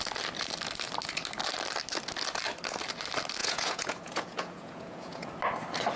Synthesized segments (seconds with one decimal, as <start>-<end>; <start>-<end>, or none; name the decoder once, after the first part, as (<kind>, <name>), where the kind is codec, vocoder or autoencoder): 3.4-5.3 (vocoder, Vocos)